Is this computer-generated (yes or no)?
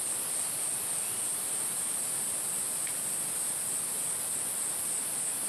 no